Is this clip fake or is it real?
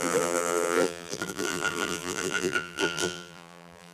fake